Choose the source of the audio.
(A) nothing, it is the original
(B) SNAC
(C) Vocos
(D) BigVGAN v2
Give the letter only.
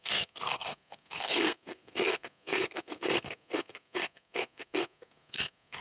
B